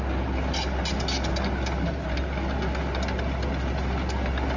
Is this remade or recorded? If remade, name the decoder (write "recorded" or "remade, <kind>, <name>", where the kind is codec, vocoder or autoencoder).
recorded